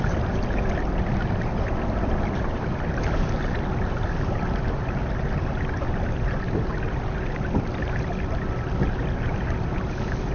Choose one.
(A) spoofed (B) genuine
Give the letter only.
B